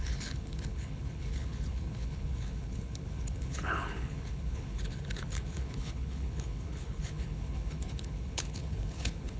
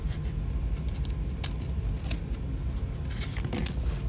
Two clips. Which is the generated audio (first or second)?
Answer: first